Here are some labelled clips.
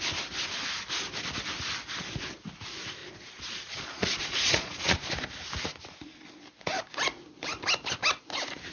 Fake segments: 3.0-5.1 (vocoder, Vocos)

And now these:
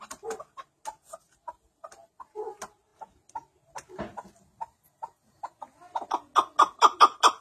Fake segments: none

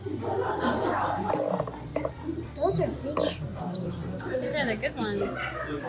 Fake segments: none

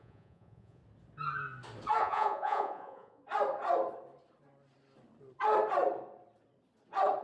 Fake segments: 0.0-0.8 (vocoder, Vocos); 2.0-3.2